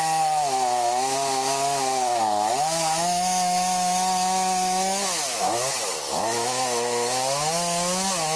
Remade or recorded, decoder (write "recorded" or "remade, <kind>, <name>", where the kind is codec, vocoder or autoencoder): remade, autoencoder, DAC-VAE